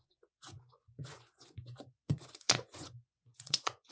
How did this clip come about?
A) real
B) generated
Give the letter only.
B